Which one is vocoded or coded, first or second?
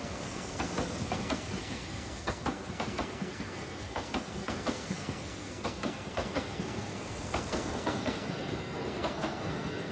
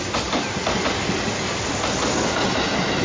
first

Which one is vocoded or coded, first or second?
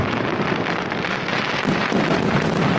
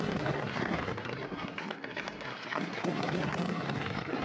second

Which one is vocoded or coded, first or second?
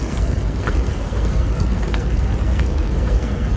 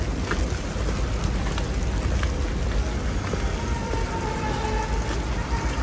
first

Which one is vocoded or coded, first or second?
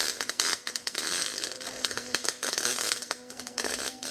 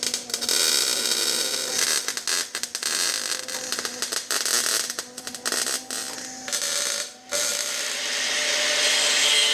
first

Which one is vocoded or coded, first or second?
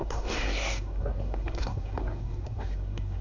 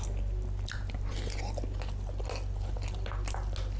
first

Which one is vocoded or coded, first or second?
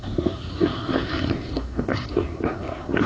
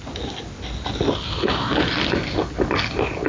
first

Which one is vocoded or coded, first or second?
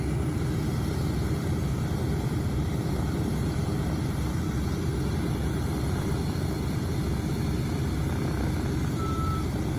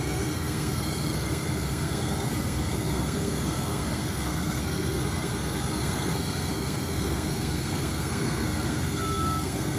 second